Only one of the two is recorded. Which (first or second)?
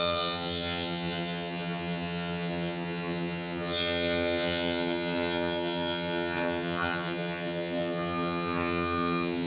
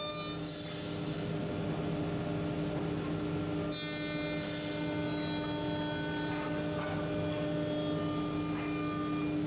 second